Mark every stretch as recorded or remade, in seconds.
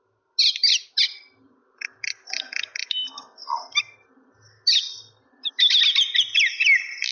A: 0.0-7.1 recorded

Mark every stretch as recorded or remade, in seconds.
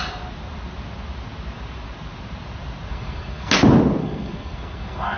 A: 0.0-2.9 recorded; 2.9-3.5 remade; 3.5-4.0 recorded; 4.0-5.2 remade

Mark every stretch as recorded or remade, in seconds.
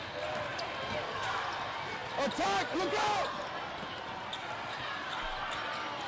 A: 0.0-6.1 recorded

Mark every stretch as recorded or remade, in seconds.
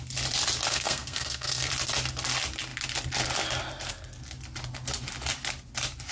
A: 0.0-0.7 recorded; 0.7-1.7 remade; 1.7-6.1 recorded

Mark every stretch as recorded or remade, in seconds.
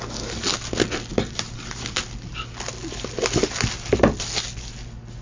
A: 0.0-5.2 recorded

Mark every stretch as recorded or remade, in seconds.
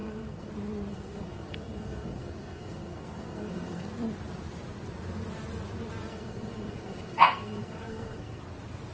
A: 0.0-0.5 remade; 0.5-0.9 recorded; 0.9-3.9 remade; 3.9-6.1 recorded; 6.1-8.4 remade; 8.4-8.9 recorded